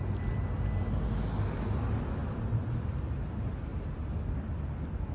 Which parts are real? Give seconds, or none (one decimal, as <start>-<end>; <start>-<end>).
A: 0.0-2.2; 2.8-5.1

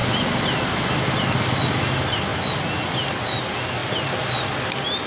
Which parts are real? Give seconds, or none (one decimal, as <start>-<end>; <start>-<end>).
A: 0.0-5.1